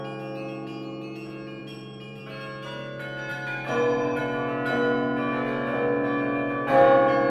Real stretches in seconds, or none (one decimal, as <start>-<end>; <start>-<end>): 0.0-1.6; 2.2-3.3; 4.2-7.3